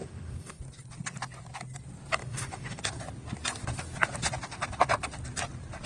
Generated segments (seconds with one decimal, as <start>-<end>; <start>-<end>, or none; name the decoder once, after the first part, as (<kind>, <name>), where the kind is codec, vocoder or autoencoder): 0.0-0.6 (autoencoder, DAC-VAE); 2.2-2.8